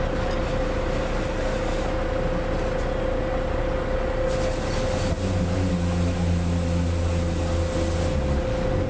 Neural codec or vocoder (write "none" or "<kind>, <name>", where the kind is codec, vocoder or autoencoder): none